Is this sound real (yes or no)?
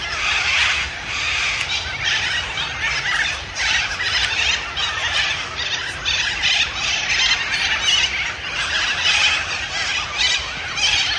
yes